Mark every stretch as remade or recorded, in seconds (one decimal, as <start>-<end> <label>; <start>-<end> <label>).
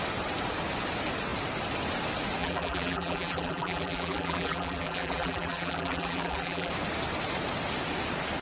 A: 0.0-2.4 recorded; 2.4-6.7 remade; 6.7-8.4 recorded